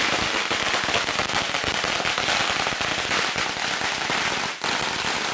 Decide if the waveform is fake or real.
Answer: real